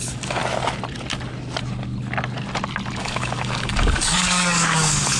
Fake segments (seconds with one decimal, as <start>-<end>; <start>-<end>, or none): 0.0-0.4; 3.0-5.2